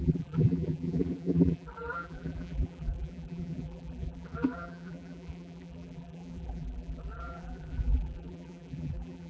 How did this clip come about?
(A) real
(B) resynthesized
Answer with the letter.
B